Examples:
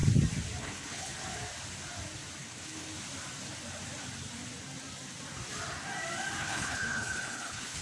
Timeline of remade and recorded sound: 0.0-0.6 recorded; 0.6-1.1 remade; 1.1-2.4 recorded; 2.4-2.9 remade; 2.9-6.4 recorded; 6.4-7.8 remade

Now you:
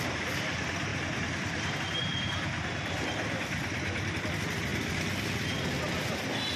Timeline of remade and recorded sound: 0.0-0.9 recorded; 0.9-1.8 remade; 1.8-6.6 recorded